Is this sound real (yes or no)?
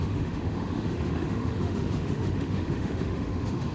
no